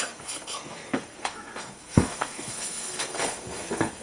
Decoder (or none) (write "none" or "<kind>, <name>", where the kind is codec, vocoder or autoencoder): codec, SNAC